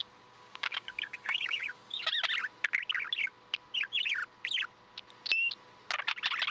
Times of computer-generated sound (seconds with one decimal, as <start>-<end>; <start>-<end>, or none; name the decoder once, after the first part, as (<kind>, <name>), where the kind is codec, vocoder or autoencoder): 0.0-2.1 (codec, DAC)